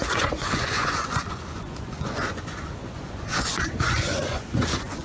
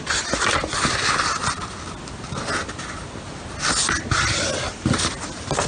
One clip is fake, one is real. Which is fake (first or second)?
first